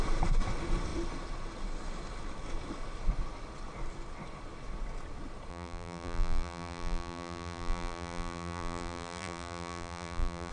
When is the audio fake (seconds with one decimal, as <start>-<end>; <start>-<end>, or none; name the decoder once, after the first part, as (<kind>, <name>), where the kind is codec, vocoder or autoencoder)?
5.5-10.5 (vocoder, BigVGAN v2)